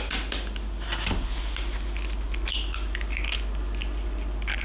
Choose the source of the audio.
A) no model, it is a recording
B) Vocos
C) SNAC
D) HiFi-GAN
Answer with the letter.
A